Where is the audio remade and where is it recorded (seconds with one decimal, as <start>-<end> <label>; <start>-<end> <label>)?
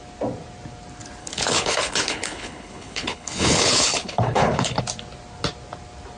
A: 0.0-1.2 recorded; 1.2-4.8 remade; 4.8-6.2 recorded